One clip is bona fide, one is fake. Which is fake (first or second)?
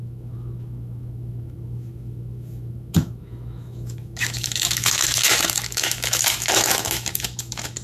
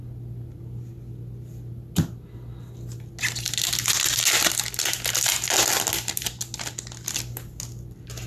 first